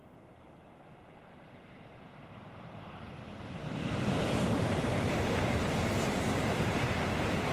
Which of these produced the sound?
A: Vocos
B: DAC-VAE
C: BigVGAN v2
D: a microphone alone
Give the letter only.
C